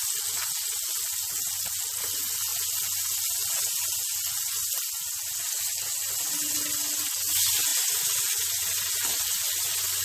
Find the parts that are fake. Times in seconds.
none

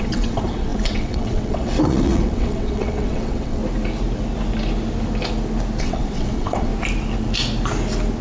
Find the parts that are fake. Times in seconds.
0.0-3.6 (vocoder, WaveNeXt); 5.8-6.7